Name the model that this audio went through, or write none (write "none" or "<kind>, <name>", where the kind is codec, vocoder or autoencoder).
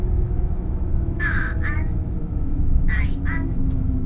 autoencoder, DAC-VAE